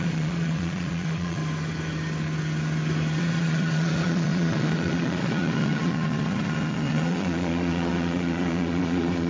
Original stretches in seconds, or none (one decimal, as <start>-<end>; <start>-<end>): 1.4-3.2

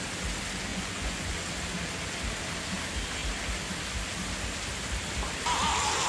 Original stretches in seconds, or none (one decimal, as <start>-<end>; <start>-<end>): 0.0-0.7; 1.4-6.1

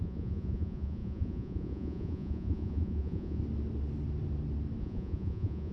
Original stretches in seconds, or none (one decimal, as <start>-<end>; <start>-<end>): 3.4-4.8

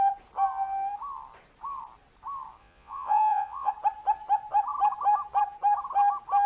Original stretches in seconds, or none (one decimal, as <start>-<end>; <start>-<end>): 0.0-2.6; 3.7-6.5

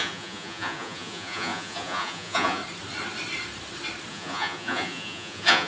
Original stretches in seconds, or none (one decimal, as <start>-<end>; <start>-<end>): 2.6-4.1

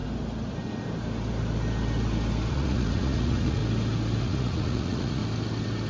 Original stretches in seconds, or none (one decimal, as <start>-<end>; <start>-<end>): 0.0-2.5; 3.6-4.2; 5.2-5.9

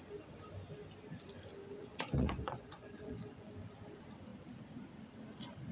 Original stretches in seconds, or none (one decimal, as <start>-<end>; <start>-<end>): 0.0-1.8; 3.5-5.7